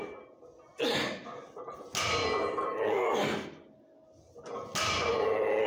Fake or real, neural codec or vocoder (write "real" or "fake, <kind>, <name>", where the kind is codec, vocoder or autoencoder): real